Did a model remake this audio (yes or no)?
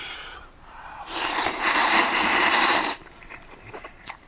yes